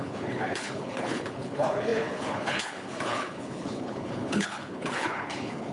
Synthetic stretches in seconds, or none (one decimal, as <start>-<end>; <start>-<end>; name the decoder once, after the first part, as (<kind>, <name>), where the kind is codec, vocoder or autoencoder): 0.0-5.7 (codec, HILCodec)